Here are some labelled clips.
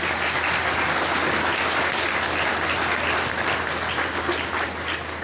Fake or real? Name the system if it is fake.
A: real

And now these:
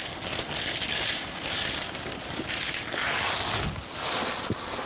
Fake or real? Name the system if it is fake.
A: real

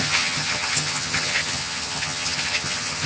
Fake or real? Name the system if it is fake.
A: fake, vocoder, HiFi-GAN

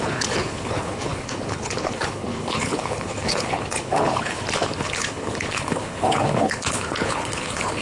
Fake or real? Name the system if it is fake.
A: fake, codec, HILCodec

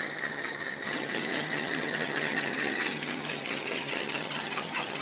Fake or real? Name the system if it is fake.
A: fake, vocoder, HiFi-GAN